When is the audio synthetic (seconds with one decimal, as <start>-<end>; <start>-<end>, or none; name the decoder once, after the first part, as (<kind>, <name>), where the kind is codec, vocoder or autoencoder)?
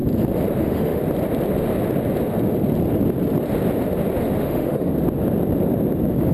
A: 0.6-1.0 (autoencoder, DAC-VAE); 4.4-4.9